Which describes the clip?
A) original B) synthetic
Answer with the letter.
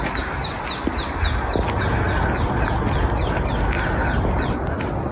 A